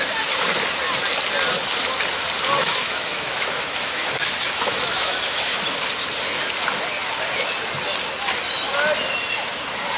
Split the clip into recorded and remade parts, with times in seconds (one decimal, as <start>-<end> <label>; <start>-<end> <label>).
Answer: 0.0-2.6 recorded; 2.6-5.6 remade; 5.6-10.0 recorded